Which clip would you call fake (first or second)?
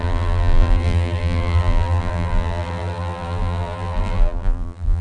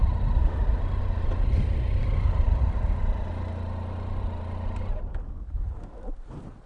first